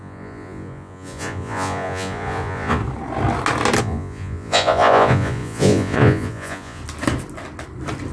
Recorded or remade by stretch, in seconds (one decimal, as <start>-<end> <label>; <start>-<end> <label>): 0.0-2.8 remade; 2.8-3.8 recorded; 3.8-6.8 remade; 6.8-8.1 recorded

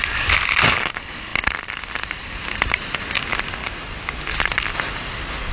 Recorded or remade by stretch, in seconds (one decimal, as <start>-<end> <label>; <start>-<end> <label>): 0.0-5.5 recorded

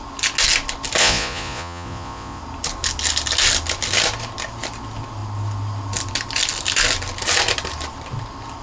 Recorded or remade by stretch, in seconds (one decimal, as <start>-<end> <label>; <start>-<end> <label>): 0.0-1.0 recorded; 1.0-2.4 remade; 2.4-8.6 recorded

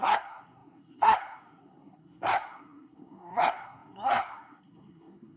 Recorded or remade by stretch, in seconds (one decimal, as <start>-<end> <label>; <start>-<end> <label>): 0.0-5.4 remade

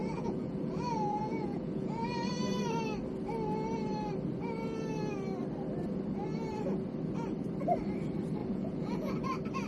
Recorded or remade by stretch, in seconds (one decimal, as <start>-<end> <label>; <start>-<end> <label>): 0.0-2.3 remade; 2.3-8.4 recorded; 8.4-9.1 remade; 9.1-9.7 recorded

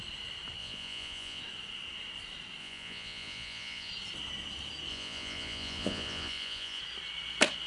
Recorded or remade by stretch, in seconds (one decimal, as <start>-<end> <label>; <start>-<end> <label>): 0.0-0.6 recorded; 0.6-1.4 remade; 1.4-2.6 recorded; 2.6-3.9 remade; 3.9-4.9 recorded; 4.9-6.8 remade; 6.8-7.7 recorded